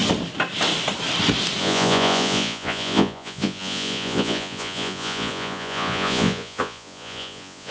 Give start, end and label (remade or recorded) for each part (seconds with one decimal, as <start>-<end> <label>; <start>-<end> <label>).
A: 0.0-1.6 recorded; 1.6-7.7 remade

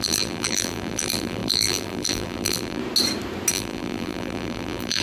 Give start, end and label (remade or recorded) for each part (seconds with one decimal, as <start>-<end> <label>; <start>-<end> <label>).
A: 0.0-2.8 remade; 2.8-3.5 recorded; 3.5-5.0 remade

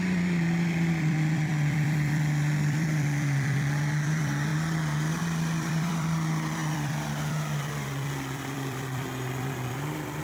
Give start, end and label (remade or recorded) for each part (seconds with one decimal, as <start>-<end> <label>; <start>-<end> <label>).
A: 0.0-4.5 remade; 4.5-5.2 recorded; 5.2-10.2 remade

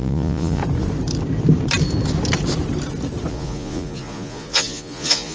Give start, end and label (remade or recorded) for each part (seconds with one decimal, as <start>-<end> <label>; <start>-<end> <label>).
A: 0.0-0.6 remade; 0.6-3.3 recorded; 3.3-5.3 remade

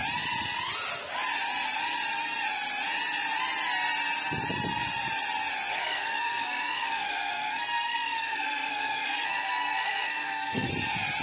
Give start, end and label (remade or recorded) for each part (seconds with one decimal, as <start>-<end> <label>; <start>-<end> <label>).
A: 0.0-5.7 recorded; 5.7-10.7 remade; 10.7-11.2 recorded

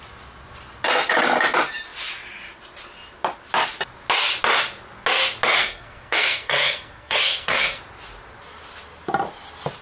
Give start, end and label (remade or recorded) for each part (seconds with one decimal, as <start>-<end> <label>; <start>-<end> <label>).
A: 0.0-5.6 recorded; 5.6-7.8 remade; 7.8-9.8 recorded